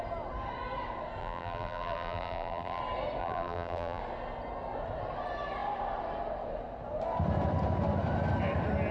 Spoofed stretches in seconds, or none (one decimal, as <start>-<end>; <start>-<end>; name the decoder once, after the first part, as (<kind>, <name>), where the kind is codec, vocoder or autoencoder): 1.2-2.8 (vocoder, BigVGAN v2); 3.2-4.0